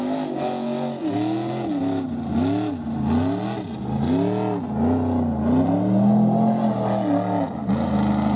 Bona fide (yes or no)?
yes